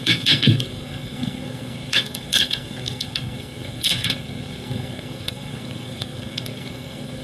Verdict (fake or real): fake